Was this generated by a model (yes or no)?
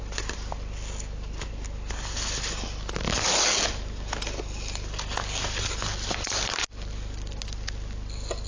no